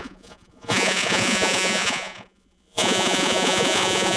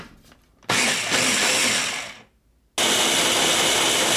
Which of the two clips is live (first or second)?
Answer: second